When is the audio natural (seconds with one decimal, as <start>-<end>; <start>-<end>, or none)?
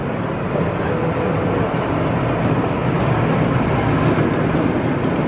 0.0-5.3